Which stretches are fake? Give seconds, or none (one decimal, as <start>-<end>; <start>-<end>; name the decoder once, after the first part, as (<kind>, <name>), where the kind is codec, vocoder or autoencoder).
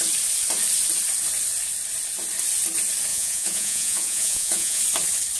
3.1-4.8 (vocoder, Vocos)